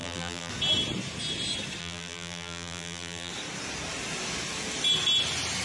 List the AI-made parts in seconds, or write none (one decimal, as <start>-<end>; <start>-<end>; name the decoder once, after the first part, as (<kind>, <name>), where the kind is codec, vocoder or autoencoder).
0.0-0.5 (vocoder, BigVGAN v2); 1.8-3.3